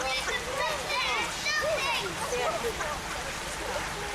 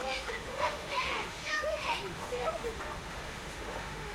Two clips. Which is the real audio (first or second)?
first